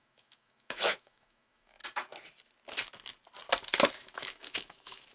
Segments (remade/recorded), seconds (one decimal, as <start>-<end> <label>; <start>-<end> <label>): 0.0-1.8 remade; 1.8-3.9 recorded; 3.9-5.1 remade